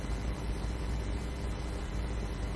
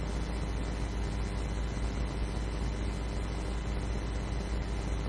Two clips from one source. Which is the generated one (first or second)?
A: first